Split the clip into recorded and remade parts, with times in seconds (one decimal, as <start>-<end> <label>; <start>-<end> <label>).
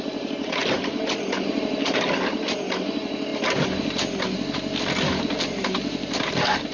0.0-3.3 remade; 3.3-5.2 recorded; 5.2-6.7 remade